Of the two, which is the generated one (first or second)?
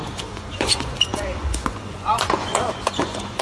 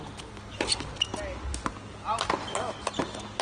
first